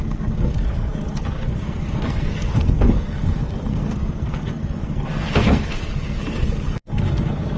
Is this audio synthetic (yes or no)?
yes